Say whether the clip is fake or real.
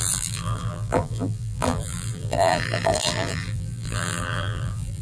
fake